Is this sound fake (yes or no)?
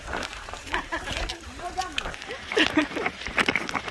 yes